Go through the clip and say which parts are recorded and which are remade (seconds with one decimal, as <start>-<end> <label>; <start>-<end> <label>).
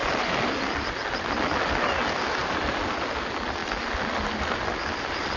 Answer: 0.0-5.4 recorded